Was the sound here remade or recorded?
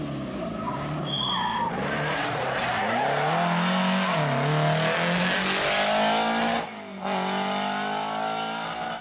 recorded